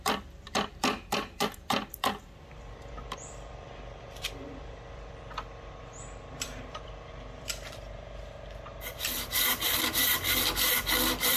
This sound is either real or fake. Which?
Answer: fake